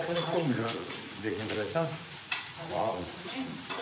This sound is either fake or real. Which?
fake